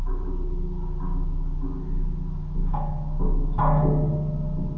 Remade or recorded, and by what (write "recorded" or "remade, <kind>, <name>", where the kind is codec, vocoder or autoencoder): recorded